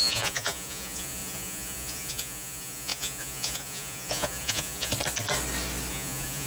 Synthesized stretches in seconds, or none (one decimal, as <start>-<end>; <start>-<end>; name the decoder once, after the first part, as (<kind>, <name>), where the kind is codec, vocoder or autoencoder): 0.0-4.9 (vocoder, Vocos); 5.9-6.5